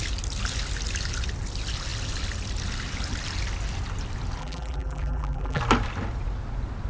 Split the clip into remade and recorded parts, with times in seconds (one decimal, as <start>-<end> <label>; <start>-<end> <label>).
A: 0.0-4.4 recorded; 4.4-5.6 remade; 5.6-6.9 recorded